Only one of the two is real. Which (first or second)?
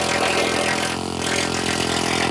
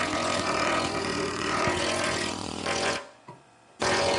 first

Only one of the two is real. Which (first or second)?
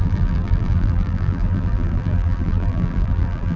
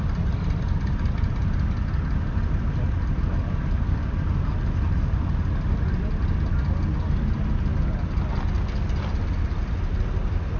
second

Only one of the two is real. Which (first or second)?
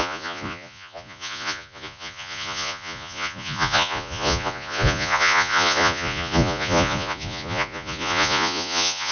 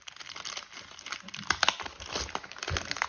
second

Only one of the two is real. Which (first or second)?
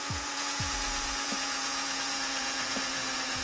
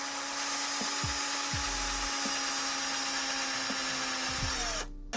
second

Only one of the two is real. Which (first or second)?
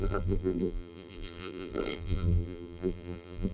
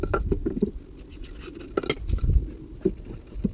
second